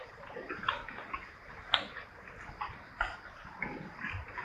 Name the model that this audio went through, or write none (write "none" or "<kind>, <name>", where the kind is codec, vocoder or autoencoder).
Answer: none